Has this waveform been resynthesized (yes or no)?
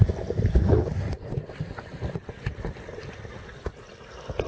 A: no